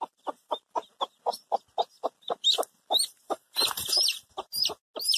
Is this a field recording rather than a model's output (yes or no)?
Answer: yes